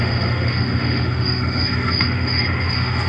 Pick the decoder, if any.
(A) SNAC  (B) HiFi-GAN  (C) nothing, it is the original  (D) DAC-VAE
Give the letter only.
D